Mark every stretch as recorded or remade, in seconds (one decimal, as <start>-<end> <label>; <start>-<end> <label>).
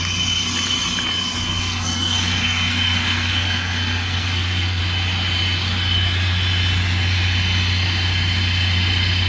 0.0-1.5 recorded; 1.5-4.8 remade; 4.8-9.3 recorded